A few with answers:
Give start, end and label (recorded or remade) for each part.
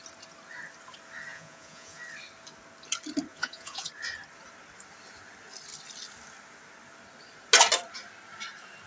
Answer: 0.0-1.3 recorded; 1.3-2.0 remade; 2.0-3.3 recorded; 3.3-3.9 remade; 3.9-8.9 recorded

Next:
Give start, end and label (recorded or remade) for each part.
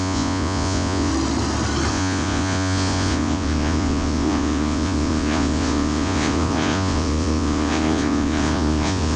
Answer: 0.0-1.1 remade; 1.1-1.9 recorded; 1.9-9.2 remade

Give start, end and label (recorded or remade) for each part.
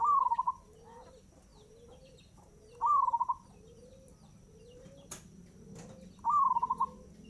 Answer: 0.0-7.3 recorded